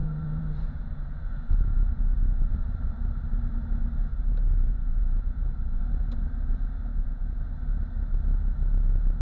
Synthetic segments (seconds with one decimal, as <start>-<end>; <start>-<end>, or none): 0.0-2.5; 4.1-5.8; 6.9-7.4